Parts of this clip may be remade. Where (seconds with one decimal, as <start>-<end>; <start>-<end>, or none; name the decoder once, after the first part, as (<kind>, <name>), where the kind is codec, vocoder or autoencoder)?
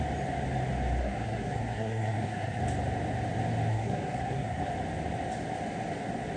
1.0-2.6 (codec, SNAC); 3.7-4.7